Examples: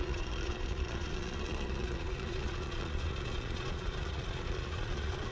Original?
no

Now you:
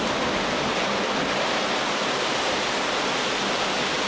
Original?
yes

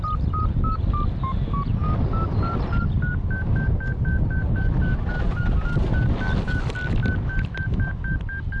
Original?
yes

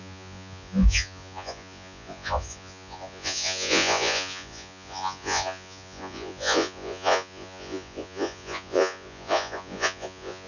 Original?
no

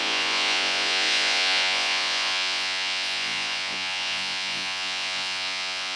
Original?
no